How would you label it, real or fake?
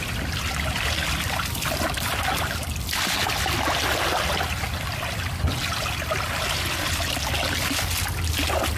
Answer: real